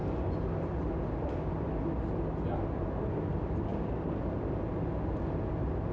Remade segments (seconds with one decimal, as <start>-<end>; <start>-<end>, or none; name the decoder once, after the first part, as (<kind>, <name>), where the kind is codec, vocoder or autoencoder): none